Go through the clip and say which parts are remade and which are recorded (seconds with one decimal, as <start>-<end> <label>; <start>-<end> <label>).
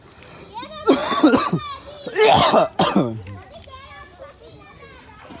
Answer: 0.0-5.4 recorded